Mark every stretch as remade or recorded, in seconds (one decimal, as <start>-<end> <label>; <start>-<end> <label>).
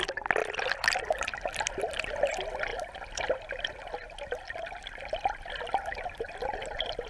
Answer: 0.0-7.1 recorded